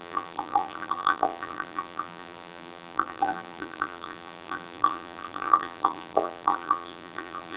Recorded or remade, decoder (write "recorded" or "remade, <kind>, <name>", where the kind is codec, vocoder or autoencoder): remade, vocoder, BigVGAN v2